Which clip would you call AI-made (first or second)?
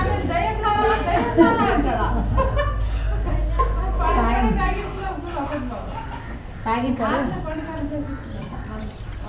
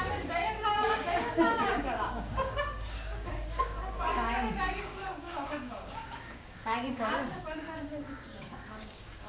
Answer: second